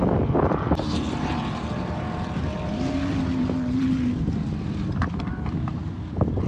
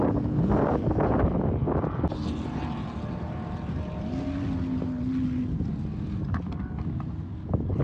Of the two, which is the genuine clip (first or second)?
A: second